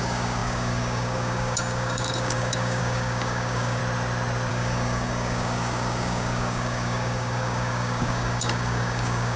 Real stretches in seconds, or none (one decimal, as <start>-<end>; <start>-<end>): 3.8-4.5